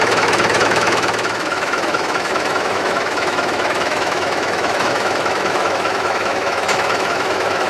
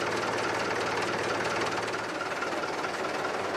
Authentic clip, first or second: second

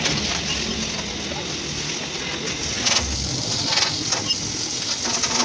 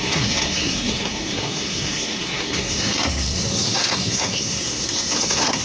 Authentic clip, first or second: first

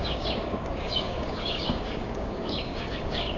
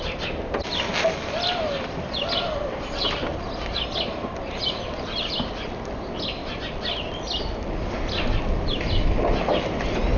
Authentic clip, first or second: second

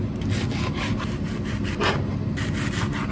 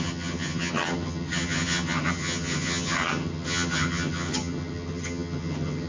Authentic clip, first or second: first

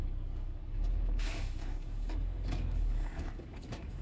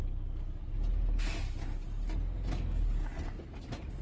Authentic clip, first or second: second